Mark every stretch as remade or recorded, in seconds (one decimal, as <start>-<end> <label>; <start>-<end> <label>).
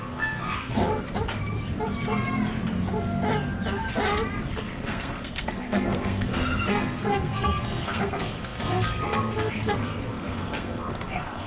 0.0-0.9 remade; 0.9-4.5 recorded; 4.5-11.5 remade